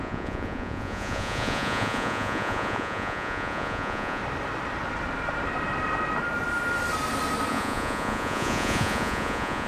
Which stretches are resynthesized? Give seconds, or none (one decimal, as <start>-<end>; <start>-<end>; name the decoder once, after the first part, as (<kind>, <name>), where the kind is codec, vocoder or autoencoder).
0.0-4.2 (vocoder, Vocos); 7.5-9.7